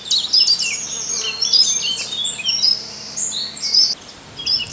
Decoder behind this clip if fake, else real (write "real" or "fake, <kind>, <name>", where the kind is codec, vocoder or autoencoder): real